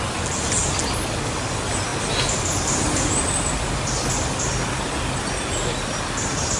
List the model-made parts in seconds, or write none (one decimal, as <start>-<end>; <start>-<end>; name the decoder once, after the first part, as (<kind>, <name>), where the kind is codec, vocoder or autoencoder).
none